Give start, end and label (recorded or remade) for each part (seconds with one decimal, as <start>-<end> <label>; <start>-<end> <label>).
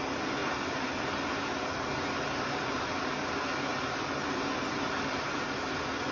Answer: 0.0-0.4 recorded; 0.4-1.1 remade; 1.1-6.1 recorded